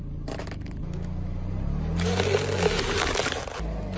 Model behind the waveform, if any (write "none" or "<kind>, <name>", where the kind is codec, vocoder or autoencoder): none